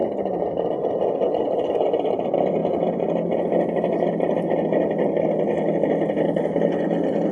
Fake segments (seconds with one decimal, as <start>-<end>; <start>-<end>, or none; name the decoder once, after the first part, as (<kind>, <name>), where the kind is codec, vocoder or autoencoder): none